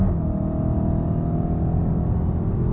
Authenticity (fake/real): real